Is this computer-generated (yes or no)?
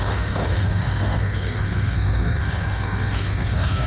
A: yes